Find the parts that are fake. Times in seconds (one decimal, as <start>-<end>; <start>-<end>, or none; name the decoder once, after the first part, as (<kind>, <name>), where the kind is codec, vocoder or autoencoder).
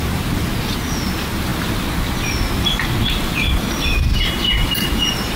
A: none